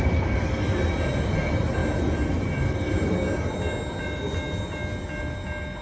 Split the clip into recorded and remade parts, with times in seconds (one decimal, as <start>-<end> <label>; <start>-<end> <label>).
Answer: 0.0-5.8 recorded